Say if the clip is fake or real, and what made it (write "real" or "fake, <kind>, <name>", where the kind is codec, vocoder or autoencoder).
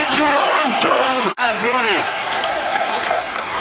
fake, codec, SNAC